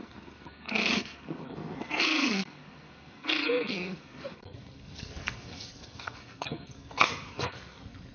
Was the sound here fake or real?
fake